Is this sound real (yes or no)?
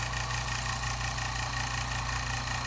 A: yes